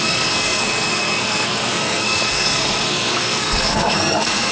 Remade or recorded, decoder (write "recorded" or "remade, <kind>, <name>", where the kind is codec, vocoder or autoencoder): remade, codec, SNAC